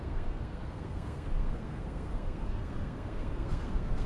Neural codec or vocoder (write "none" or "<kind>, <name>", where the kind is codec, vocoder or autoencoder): codec, SNAC